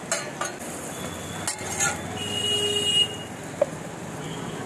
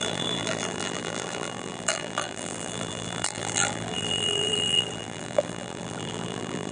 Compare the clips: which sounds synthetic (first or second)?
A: second